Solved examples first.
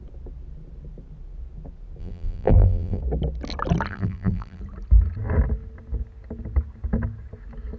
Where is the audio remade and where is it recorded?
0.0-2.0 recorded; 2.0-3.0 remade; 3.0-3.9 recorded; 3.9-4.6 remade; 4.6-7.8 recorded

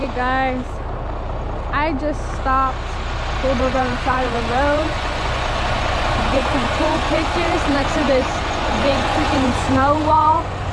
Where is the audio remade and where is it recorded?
0.0-3.6 recorded; 3.6-10.7 remade